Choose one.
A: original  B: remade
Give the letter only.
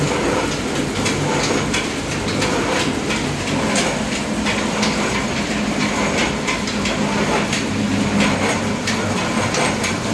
A